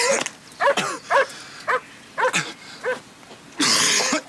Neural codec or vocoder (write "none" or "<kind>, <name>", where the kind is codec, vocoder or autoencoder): none